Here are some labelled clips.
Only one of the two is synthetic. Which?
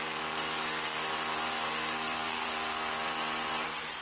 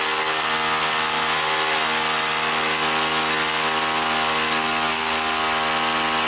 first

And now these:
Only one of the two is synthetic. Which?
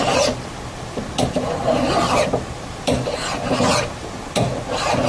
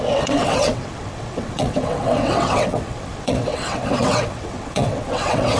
second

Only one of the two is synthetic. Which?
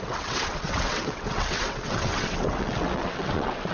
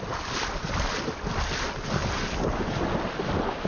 first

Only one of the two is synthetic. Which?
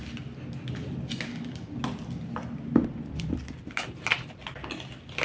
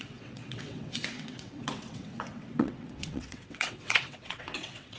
second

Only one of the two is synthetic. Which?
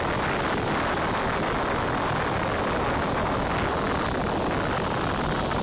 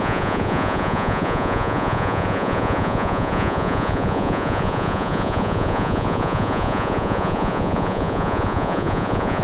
second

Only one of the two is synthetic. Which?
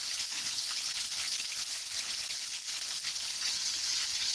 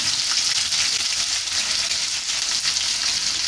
first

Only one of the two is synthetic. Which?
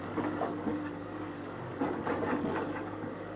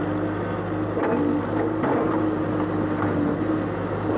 first